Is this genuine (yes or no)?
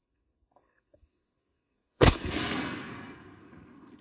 no